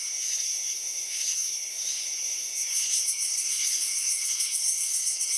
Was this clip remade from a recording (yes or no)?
yes